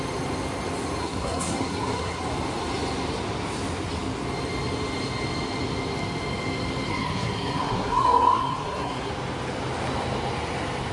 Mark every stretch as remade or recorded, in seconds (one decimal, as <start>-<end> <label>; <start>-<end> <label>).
0.0-1.0 recorded; 1.0-2.2 remade; 2.2-6.9 recorded; 6.9-9.1 remade; 9.1-10.9 recorded